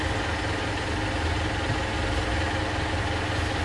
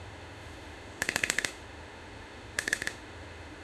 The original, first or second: first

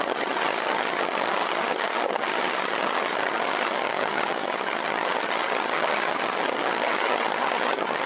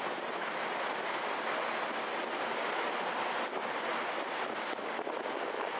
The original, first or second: second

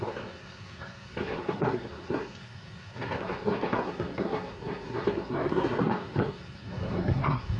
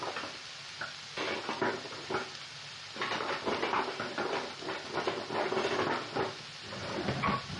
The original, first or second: second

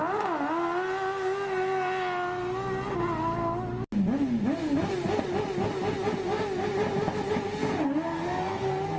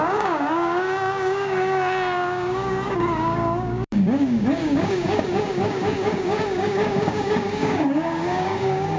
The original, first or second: first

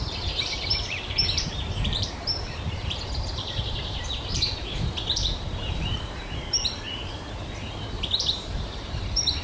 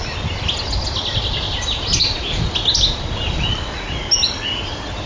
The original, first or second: second